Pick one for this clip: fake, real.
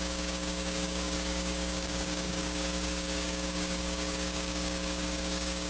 fake